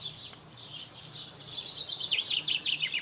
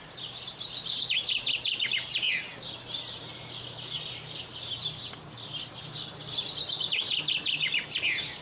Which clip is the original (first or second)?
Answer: second